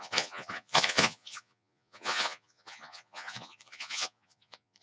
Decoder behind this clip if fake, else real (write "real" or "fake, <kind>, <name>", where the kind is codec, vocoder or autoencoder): fake, vocoder, Vocos